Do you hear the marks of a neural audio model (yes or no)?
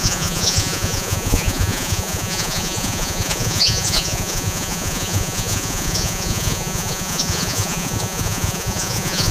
yes